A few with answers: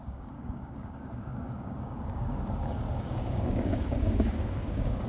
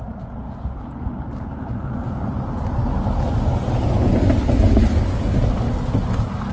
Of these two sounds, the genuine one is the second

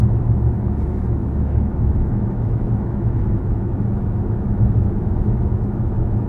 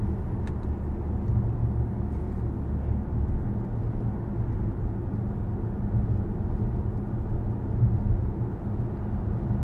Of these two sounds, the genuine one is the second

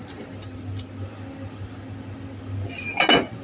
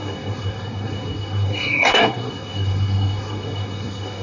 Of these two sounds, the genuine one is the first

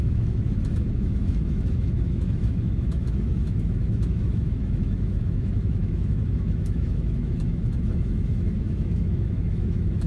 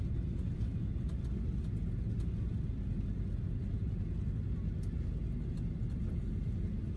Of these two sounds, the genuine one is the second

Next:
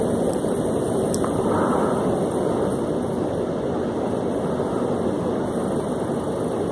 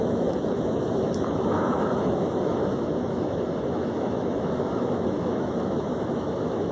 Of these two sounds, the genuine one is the first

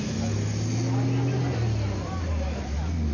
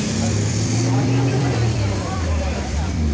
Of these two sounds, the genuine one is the first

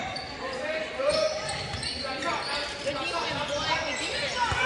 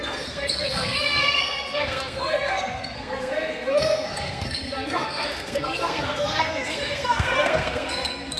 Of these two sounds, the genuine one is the first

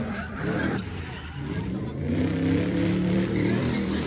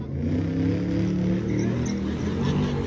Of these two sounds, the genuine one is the second